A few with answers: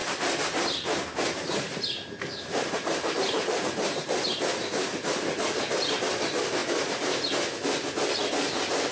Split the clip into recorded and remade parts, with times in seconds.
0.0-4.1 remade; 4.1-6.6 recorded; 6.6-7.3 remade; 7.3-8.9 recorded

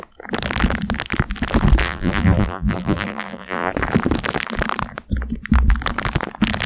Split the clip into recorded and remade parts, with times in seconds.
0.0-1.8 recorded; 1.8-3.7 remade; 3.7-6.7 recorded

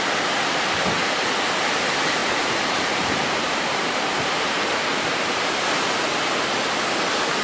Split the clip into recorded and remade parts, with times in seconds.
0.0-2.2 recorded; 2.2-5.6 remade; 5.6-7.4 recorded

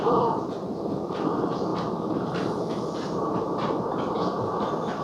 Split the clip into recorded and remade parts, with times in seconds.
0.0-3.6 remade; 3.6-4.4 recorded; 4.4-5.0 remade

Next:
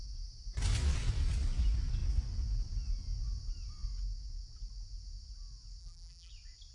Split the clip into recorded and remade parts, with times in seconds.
0.0-5.8 recorded; 5.8-6.3 remade; 6.3-6.7 recorded

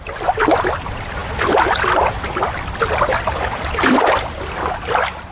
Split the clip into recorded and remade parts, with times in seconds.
0.0-1.2 remade; 1.2-4.4 recorded; 4.4-5.3 remade

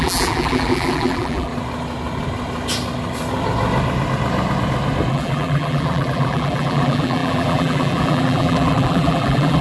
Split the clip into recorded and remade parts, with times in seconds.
0.0-1.5 remade; 1.5-5.1 recorded; 5.1-9.6 remade

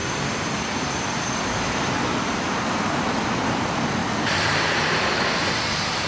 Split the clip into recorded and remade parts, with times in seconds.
0.0-4.0 remade; 4.0-5.6 recorded; 5.6-6.1 remade